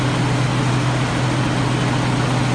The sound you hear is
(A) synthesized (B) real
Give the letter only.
B